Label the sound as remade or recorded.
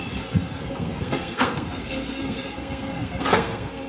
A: remade